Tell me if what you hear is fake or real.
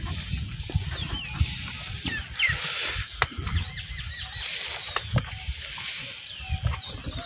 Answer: real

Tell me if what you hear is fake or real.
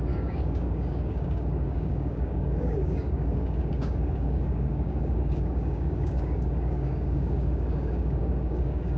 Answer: fake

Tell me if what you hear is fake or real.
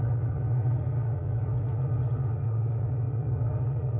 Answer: fake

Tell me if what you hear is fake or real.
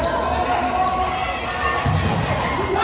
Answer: real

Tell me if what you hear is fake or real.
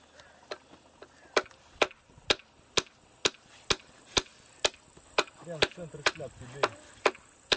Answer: real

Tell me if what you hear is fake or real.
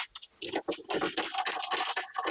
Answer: real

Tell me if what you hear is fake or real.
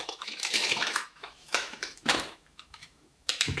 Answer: fake